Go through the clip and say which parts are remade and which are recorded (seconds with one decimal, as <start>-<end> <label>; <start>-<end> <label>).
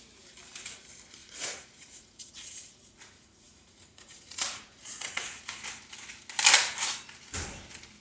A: 0.0-1.2 recorded; 1.2-5.5 remade; 5.5-8.0 recorded